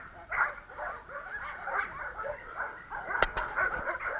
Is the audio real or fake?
real